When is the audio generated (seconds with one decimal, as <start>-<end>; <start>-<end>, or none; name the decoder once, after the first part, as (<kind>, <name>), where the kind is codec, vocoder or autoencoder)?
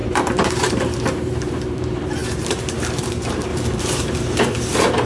0.5-3.5 (vocoder, BigVGAN v2); 4.4-5.1